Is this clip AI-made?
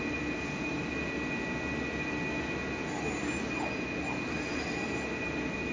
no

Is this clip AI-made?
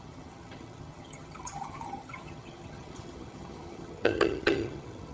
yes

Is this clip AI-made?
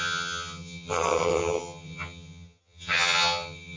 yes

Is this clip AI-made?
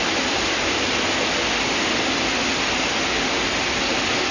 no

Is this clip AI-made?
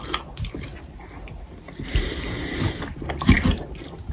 no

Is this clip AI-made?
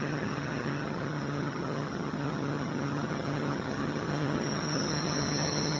yes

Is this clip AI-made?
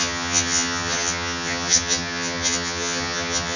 yes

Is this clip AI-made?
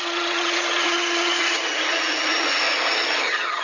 yes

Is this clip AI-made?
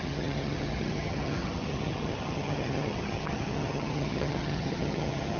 yes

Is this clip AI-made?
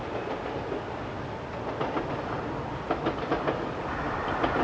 no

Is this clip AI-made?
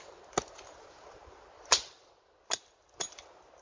no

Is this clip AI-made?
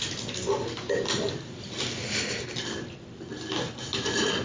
no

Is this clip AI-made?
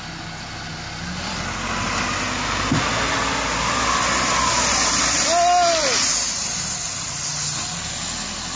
no